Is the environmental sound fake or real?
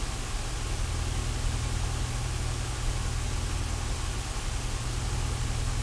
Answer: real